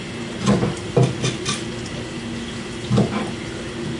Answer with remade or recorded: recorded